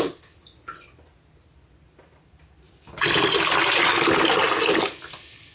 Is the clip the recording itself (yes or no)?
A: yes